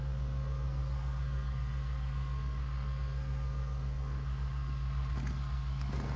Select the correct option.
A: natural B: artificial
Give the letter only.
B